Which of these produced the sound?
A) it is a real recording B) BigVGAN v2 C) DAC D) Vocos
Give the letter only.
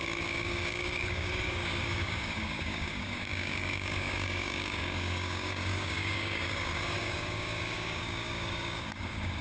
C